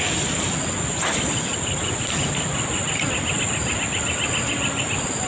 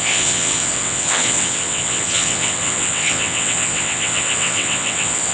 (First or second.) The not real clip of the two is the second